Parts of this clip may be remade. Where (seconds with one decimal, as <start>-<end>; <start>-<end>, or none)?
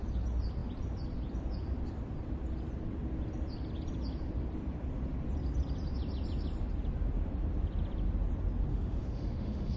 8.7-9.8